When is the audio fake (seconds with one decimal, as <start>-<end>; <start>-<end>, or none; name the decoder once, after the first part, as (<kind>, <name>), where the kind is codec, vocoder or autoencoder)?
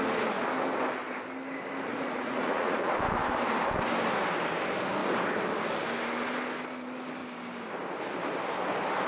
1.9-2.9 (vocoder, Vocos)